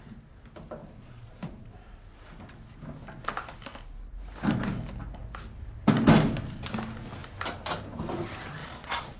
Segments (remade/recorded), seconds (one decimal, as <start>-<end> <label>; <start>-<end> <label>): 0.0-0.8 recorded; 0.8-1.7 remade; 1.7-8.6 recorded; 8.6-9.2 remade